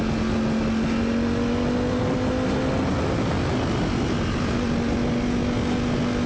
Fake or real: real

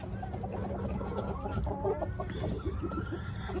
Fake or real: real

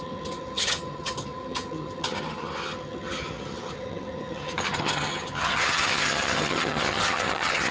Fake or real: fake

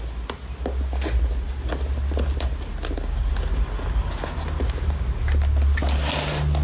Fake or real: real